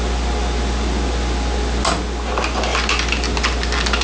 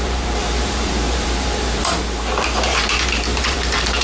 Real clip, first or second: first